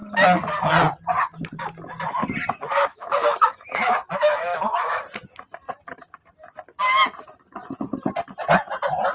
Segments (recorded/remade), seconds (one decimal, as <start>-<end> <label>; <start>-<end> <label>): 0.0-2.9 recorded; 2.9-4.9 remade; 4.9-9.1 recorded